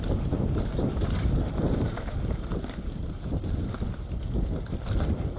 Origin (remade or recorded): remade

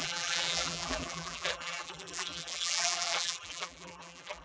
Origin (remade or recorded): remade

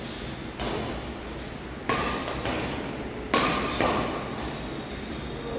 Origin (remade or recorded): recorded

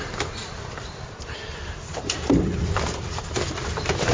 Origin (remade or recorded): remade